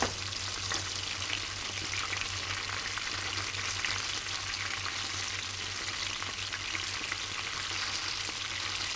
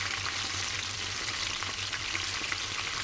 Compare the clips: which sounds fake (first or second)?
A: second